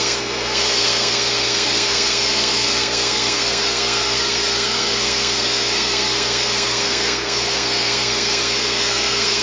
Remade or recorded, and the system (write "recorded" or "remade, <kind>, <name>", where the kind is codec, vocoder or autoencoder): remade, codec, SNAC